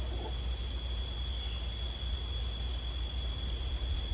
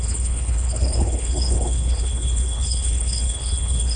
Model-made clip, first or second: second